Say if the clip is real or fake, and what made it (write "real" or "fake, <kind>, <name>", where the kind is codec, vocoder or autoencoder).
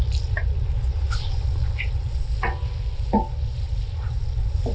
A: real